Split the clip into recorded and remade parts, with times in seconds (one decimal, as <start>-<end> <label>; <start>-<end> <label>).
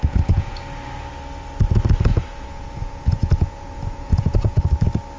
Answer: 0.0-0.6 remade; 0.6-2.1 recorded; 2.1-4.6 remade; 4.6-5.2 recorded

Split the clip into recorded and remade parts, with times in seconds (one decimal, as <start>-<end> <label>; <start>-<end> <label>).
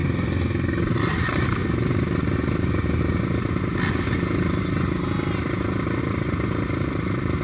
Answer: 0.0-1.0 recorded; 1.0-1.6 remade; 1.6-6.0 recorded; 6.0-7.4 remade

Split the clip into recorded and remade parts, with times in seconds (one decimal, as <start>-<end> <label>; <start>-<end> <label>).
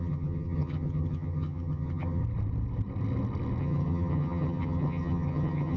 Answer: 0.0-2.2 remade; 2.2-3.6 recorded; 3.6-5.8 remade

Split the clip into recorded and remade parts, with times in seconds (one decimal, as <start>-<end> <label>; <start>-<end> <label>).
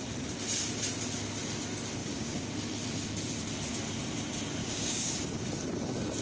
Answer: 0.0-2.0 recorded; 2.0-2.5 remade; 2.5-4.6 recorded; 4.6-5.2 remade; 5.2-6.2 recorded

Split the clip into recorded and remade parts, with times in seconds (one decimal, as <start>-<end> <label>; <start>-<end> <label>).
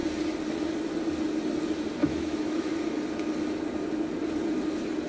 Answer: 0.0-2.0 recorded; 2.0-2.7 remade; 2.7-5.1 recorded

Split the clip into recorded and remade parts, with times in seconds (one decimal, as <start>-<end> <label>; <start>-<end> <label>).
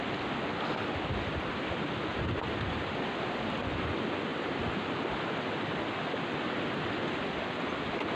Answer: 0.0-2.1 recorded; 2.1-2.9 remade; 2.9-4.3 recorded; 4.3-4.9 remade; 4.9-8.2 recorded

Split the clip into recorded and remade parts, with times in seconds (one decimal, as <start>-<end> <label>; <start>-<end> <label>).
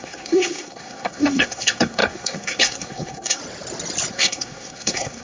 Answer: 0.0-3.4 remade; 3.4-4.1 recorded; 4.1-5.2 remade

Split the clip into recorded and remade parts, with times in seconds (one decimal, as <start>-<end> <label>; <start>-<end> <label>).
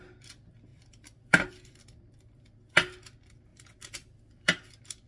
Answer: 0.0-0.7 recorded; 0.7-1.5 remade; 1.5-3.5 recorded; 3.5-5.1 remade